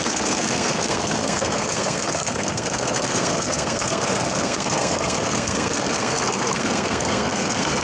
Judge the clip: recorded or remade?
remade